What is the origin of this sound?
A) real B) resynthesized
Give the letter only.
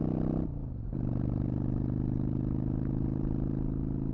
A